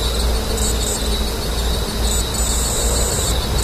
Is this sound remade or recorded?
recorded